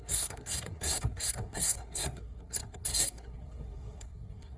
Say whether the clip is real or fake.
fake